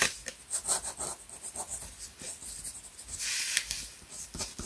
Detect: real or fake real